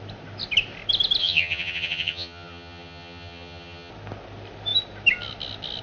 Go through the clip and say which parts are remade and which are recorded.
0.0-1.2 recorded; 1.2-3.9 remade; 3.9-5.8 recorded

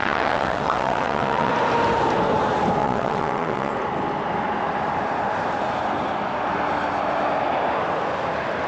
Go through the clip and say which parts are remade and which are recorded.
0.0-1.5 remade; 1.5-2.8 recorded; 2.8-3.7 remade; 3.7-8.7 recorded